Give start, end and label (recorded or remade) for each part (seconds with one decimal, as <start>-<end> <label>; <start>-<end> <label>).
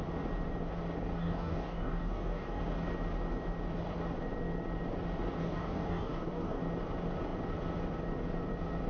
0.0-1.2 recorded; 1.2-2.6 remade; 2.6-5.4 recorded; 5.4-6.6 remade; 6.6-8.9 recorded